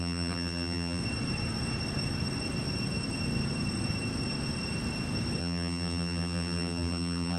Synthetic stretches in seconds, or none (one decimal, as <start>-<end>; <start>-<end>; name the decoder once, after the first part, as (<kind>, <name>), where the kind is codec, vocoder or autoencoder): 0.0-1.0 (vocoder, BigVGAN v2); 5.4-7.4